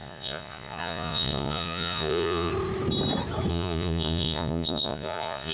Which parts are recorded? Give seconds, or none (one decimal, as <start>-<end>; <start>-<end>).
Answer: 2.5-3.5